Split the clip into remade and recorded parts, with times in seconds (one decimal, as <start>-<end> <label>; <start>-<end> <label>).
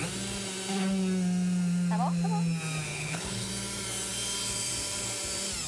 0.0-2.9 recorded; 2.9-3.5 remade; 3.5-5.7 recorded